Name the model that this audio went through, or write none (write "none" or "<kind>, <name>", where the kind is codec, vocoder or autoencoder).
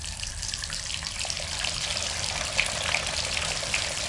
none